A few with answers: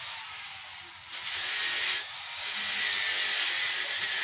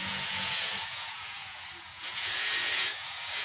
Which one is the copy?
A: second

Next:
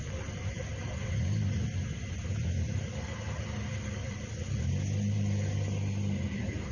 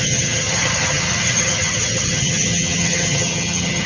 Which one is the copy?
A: second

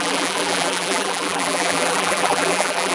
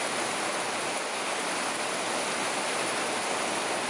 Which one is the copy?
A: first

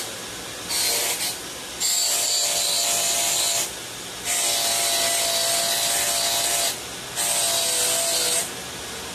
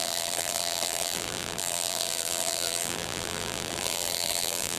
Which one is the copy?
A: second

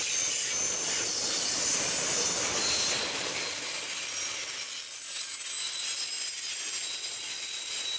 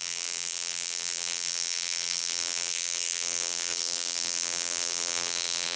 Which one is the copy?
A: second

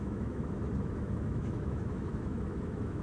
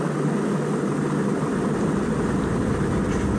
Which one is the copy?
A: first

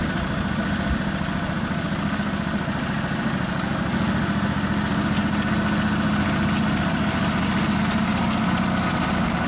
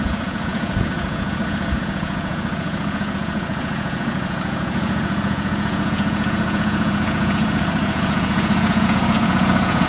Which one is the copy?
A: second